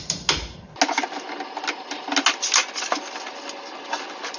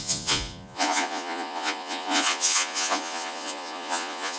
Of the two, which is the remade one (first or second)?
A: second